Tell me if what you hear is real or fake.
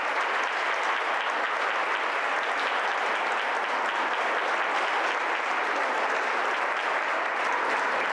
real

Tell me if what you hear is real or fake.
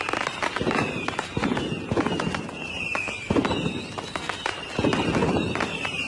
real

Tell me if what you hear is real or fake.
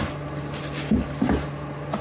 real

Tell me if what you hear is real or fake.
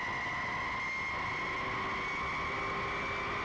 real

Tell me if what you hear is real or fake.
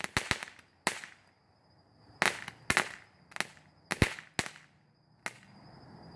real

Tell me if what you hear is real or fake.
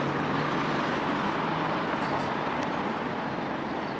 real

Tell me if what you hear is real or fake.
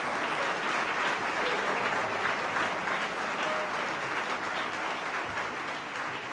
real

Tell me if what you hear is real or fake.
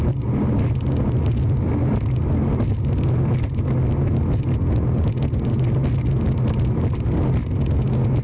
real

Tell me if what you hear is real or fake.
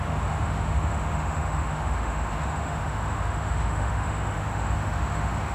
fake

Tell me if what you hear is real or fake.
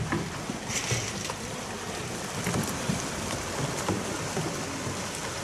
real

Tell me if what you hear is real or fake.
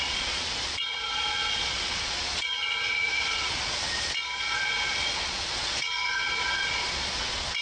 fake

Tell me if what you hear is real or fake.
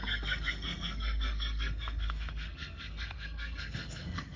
fake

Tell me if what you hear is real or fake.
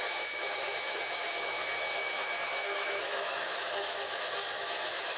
fake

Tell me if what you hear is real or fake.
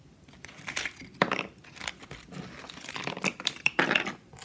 real